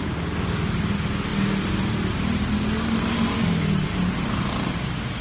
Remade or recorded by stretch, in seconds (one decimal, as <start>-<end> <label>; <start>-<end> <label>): 0.0-5.2 recorded